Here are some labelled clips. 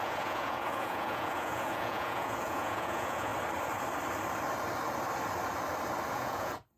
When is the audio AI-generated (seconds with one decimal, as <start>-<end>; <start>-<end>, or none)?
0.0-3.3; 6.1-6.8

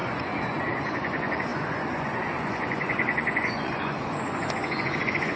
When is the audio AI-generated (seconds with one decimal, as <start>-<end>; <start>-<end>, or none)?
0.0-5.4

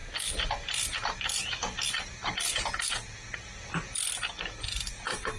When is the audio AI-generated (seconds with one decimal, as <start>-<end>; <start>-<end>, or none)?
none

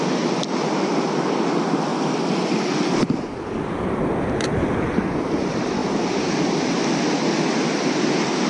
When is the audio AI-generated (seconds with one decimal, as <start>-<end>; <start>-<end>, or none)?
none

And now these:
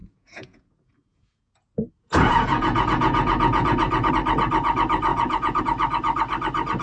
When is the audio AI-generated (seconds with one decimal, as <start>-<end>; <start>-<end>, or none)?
0.0-4.1; 5.1-5.6

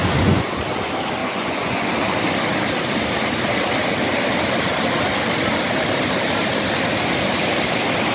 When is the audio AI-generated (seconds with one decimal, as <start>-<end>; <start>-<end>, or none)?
0.0-0.6; 1.2-1.9

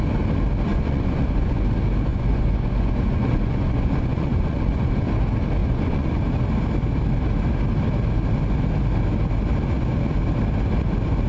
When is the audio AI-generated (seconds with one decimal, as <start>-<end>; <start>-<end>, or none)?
0.7-1.6; 2.1-4.9; 5.6-6.2

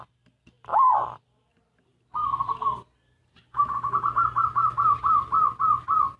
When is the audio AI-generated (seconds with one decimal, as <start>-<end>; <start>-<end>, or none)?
none